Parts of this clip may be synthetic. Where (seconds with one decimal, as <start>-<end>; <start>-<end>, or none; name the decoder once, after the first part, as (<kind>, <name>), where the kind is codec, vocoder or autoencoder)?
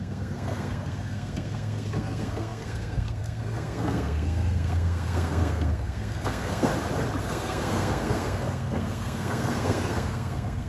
0.0-6.7 (codec, SNAC); 7.2-10.7